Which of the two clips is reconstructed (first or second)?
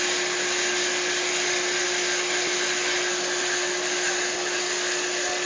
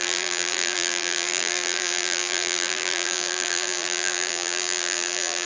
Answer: second